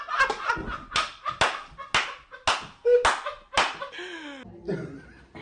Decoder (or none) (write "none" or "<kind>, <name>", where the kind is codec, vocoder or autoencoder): none